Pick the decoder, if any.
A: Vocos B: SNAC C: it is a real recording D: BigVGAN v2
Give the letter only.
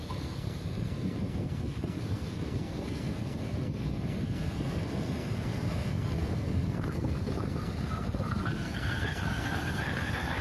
B